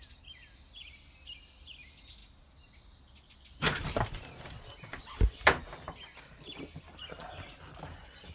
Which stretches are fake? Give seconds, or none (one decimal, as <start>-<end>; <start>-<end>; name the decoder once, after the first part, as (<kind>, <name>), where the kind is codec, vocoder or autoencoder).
none